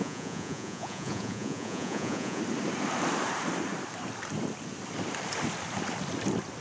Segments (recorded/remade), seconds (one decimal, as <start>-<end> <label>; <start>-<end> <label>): 0.0-2.4 remade; 2.4-6.6 recorded